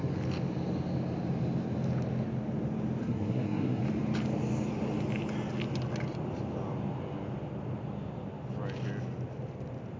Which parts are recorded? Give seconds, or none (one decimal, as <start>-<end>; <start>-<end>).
0.0-3.0; 3.8-10.0